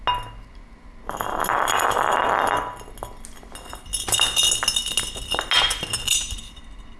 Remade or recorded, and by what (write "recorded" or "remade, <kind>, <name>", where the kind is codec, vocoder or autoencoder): recorded